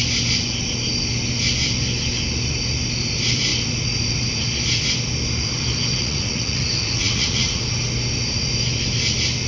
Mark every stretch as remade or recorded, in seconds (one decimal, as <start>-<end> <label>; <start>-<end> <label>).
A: 0.0-5.9 recorded; 5.9-7.6 remade; 7.6-9.5 recorded